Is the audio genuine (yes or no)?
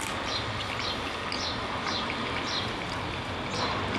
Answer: yes